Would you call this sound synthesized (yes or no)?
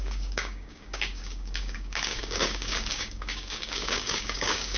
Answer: yes